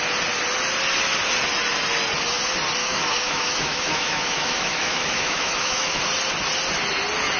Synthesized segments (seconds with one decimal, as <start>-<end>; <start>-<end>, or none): 2.8-6.0